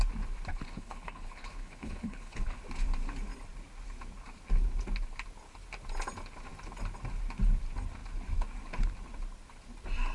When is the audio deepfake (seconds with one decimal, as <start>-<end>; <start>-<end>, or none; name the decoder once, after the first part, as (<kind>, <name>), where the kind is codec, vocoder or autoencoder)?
0.5-2.6 (codec, HILCodec)